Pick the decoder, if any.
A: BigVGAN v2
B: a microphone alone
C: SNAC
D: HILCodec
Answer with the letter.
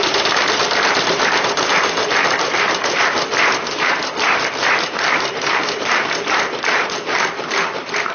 A